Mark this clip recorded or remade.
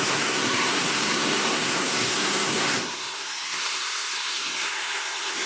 remade